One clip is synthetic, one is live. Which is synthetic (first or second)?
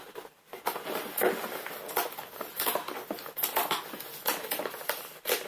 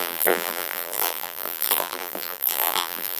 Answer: second